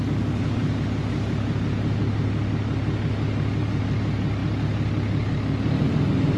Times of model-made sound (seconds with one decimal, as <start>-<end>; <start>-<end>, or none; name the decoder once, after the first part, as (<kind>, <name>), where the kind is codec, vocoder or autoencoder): none